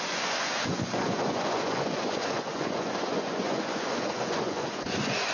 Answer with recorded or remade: remade